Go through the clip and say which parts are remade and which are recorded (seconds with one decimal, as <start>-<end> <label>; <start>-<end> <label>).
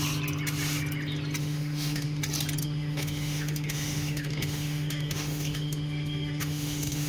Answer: 0.0-1.4 recorded; 1.4-2.2 remade; 2.2-2.6 recorded; 2.6-7.1 remade